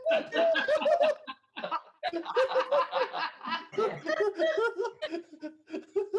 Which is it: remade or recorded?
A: recorded